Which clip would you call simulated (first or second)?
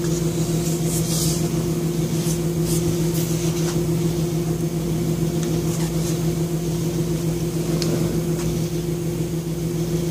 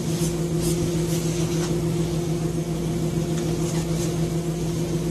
first